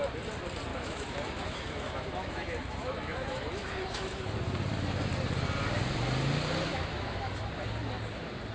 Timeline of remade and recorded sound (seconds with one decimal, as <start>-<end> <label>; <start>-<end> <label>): 0.0-0.7 recorded; 0.7-4.2 remade; 4.2-6.7 recorded; 6.7-7.5 remade; 7.5-8.5 recorded